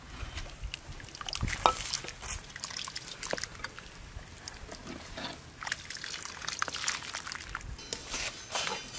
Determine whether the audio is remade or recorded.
recorded